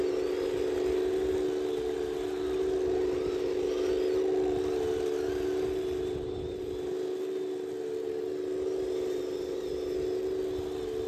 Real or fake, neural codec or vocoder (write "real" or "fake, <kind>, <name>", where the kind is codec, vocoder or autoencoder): real